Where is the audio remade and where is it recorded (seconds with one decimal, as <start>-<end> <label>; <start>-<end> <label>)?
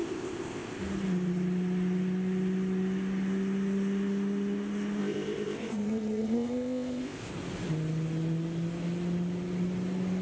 0.0-0.8 remade; 0.8-5.0 recorded; 5.0-7.3 remade; 7.3-10.2 recorded